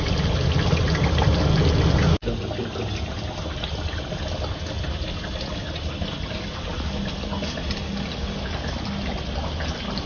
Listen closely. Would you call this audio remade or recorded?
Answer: recorded